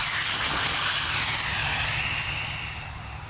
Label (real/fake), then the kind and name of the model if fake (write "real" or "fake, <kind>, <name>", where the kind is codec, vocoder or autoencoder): real